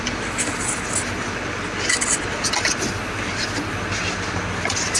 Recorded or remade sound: recorded